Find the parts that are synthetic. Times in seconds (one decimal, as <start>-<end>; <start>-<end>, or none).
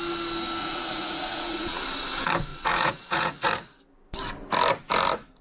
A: 0.6-1.8; 2.5-3.5